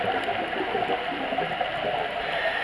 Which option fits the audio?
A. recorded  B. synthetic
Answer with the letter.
A